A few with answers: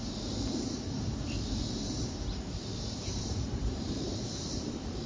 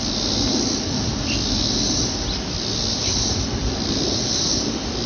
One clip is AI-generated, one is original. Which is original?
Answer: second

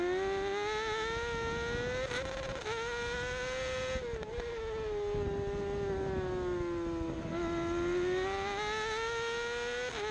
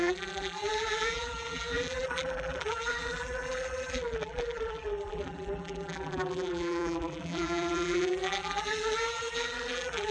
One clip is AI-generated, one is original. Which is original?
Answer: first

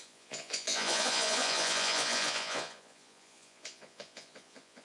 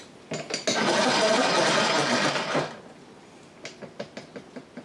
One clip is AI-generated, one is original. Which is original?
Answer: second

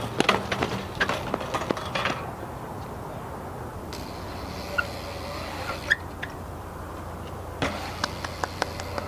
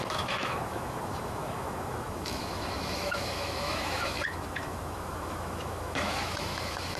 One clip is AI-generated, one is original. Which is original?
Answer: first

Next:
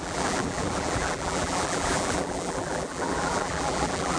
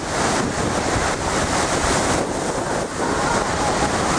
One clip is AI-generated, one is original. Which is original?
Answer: second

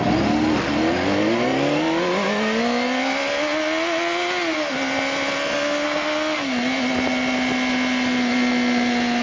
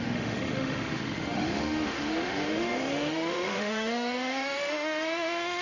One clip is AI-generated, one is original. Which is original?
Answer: first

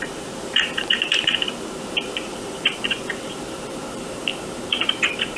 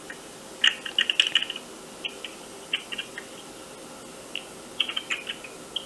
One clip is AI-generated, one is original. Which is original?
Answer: second